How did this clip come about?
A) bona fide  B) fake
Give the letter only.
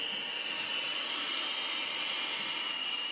A